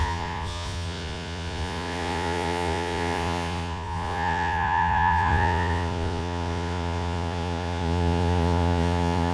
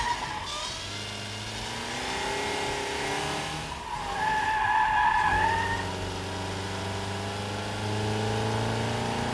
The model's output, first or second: first